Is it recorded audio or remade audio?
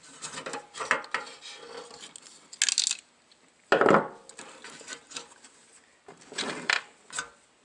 recorded